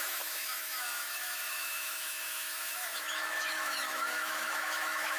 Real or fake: fake